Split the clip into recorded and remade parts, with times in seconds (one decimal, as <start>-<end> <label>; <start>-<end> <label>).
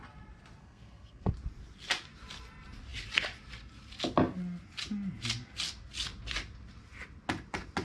0.0-0.6 recorded; 0.6-1.3 remade; 1.3-7.8 recorded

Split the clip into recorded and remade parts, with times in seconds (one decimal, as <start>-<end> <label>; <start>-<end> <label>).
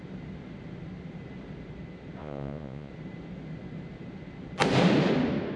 0.0-2.2 recorded; 2.2-2.9 remade; 2.9-5.6 recorded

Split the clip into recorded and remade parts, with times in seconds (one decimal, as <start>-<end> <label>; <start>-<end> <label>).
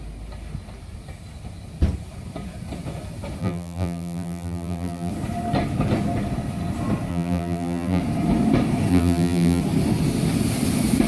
0.0-3.4 recorded; 3.4-5.1 remade; 5.1-7.1 recorded; 7.1-8.0 remade; 8.0-8.9 recorded; 8.9-9.6 remade; 9.6-11.1 recorded